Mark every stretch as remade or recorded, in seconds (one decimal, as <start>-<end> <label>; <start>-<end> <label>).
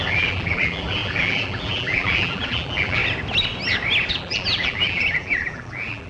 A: 0.0-3.0 remade; 3.0-4.1 recorded; 4.1-6.1 remade